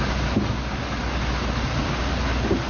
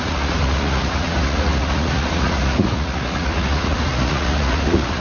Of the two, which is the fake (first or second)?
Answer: second